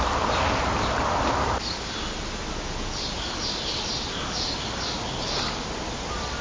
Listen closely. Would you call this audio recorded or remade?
recorded